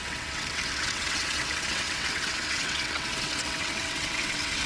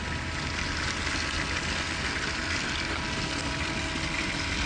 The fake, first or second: first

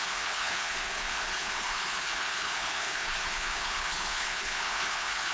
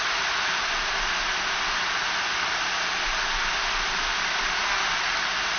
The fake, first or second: first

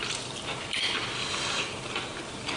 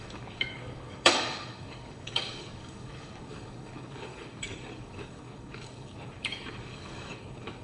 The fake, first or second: second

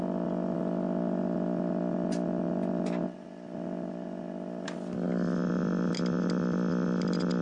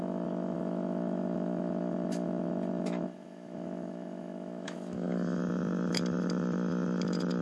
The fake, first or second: second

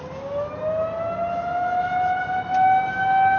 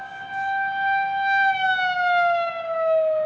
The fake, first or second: second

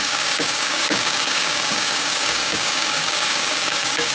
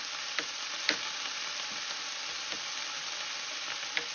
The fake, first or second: first